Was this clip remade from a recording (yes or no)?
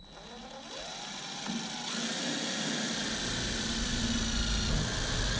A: no